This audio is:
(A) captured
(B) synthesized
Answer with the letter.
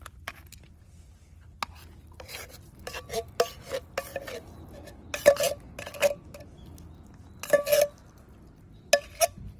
A